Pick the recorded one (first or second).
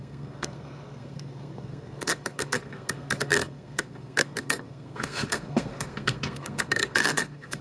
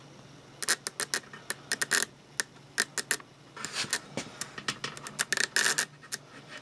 second